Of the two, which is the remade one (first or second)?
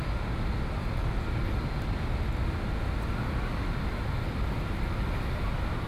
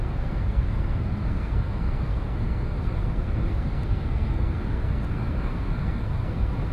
second